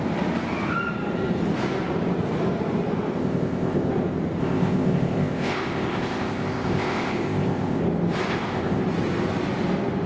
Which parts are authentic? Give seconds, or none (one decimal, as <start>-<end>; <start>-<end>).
0.0-3.2; 3.9-4.4; 7.8-8.3; 8.8-10.1